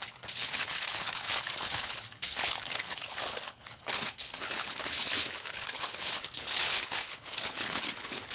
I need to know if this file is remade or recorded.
remade